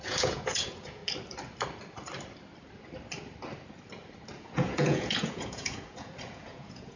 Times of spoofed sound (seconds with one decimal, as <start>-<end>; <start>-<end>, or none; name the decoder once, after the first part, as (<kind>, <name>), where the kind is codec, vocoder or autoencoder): 0.0-1.0 (vocoder, Vocos); 4.4-7.0